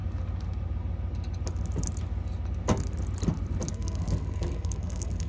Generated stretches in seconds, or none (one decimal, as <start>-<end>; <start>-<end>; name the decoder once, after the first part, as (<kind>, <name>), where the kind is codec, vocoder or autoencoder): 3.7-5.3 (codec, SNAC)